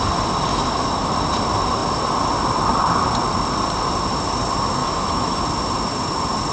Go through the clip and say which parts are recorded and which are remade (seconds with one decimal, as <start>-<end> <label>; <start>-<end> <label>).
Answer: 0.0-0.5 recorded; 0.5-1.1 remade; 1.1-4.8 recorded; 4.8-5.4 remade; 5.4-6.5 recorded